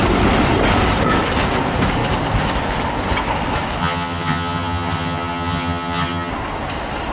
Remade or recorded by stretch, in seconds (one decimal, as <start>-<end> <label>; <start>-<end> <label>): 0.0-3.8 recorded; 3.8-6.3 remade; 6.3-7.1 recorded